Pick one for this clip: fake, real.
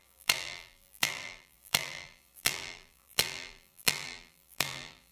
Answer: fake